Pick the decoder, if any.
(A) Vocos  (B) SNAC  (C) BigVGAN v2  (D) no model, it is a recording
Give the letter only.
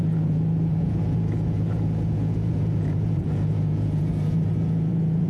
A